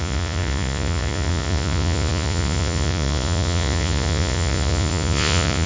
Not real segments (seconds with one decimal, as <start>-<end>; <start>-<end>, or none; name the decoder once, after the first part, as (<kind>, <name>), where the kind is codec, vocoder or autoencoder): 0.0-5.7 (vocoder, Vocos)